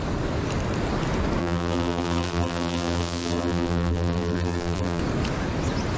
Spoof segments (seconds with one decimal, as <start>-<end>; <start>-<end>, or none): 1.4-5.0